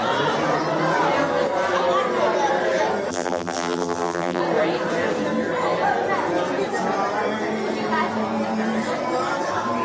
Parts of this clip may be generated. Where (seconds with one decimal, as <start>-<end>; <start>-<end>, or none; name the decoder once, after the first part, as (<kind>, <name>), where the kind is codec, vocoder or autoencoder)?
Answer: 3.1-4.4 (vocoder, BigVGAN v2)